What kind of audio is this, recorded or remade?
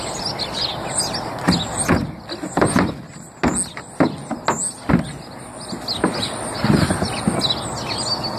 recorded